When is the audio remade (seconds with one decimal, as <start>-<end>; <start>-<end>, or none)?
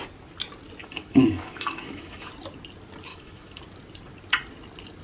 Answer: 0.8-2.3; 3.1-3.6